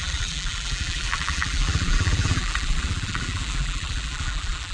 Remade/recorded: remade